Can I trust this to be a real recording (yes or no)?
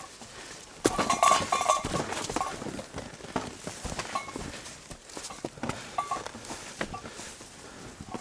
yes